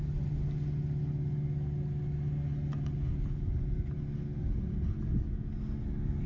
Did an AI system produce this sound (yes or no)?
no